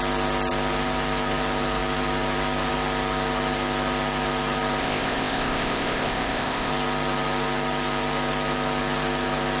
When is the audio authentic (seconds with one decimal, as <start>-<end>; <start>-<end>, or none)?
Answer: 0.0-4.8; 6.7-9.6